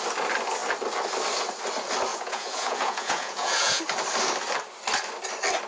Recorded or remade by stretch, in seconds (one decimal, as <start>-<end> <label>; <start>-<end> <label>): 0.0-2.1 recorded; 2.1-3.8 remade; 3.8-5.7 recorded